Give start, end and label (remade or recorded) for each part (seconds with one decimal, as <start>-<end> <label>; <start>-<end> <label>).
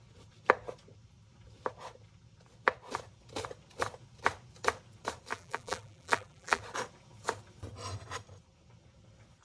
0.0-5.3 recorded; 5.3-6.6 remade; 6.6-9.4 recorded